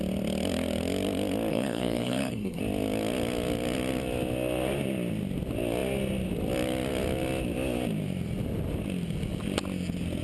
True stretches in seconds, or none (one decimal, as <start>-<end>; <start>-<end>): 0.0-1.5; 2.6-10.2